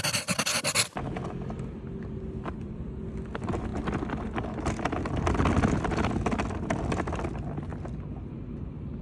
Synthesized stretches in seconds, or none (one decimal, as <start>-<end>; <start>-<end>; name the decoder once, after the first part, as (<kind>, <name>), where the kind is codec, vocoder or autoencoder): none